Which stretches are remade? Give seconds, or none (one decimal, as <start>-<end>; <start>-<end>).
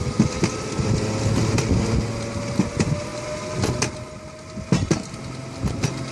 none